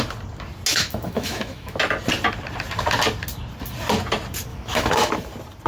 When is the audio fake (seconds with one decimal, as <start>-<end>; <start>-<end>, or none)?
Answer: 0.7-1.8; 4.5-5.1